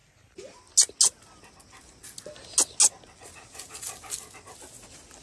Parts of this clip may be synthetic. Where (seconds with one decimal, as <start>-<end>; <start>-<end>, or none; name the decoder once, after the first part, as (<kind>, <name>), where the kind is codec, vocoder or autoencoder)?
none